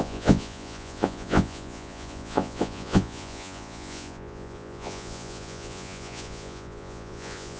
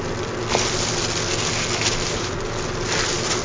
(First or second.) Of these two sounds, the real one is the second